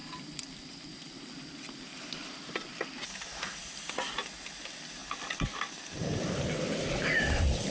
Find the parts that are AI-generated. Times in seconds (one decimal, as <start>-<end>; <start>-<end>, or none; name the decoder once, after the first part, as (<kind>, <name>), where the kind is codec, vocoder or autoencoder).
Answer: 0.0-3.1 (vocoder, BigVGAN v2); 5.0-6.3